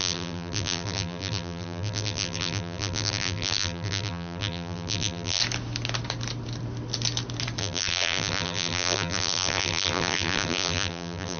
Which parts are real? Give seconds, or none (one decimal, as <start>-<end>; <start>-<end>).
5.4-7.6